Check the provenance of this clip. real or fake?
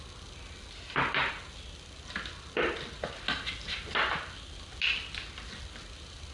real